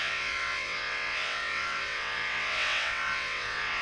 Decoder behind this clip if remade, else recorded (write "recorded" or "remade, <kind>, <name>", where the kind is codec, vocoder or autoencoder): remade, vocoder, WaveNeXt